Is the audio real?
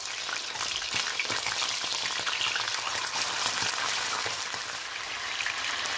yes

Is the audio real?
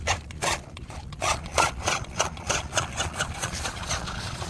no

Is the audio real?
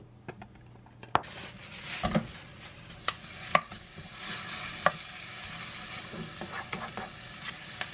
yes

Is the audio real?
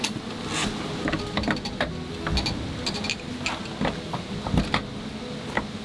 yes